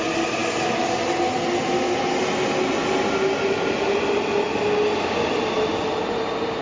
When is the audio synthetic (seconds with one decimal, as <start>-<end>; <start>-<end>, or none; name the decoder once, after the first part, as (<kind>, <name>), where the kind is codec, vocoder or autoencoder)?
none

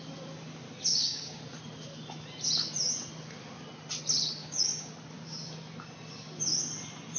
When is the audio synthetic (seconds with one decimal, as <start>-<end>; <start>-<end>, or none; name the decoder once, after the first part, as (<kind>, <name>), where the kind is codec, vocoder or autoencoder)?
0.9-1.4 (codec, DAC); 4.4-4.9

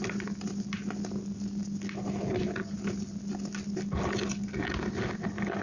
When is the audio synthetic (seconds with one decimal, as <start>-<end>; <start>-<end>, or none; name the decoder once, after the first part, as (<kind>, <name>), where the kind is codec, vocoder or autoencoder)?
none

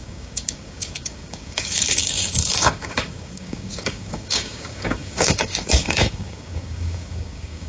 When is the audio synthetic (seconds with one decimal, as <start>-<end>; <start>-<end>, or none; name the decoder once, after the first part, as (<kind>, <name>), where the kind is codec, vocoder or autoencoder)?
0.0-7.7 (codec, DAC)

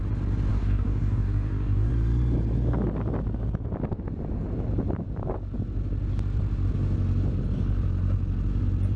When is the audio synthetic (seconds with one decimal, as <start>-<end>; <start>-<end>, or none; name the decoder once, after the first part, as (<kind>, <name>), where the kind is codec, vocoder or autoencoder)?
0.5-1.9 (codec, DAC)